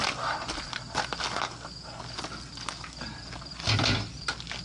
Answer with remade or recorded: recorded